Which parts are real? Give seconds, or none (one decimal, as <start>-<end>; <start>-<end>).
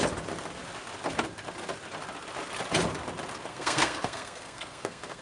0.0-3.5